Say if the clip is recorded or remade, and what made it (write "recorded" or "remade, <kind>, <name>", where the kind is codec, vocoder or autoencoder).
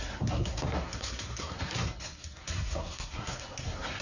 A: remade, codec, SNAC